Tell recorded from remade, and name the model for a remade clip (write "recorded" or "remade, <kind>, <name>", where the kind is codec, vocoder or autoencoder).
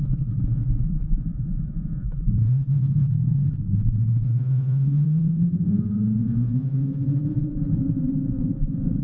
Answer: remade, vocoder, Vocos